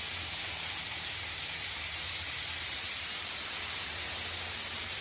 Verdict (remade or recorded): remade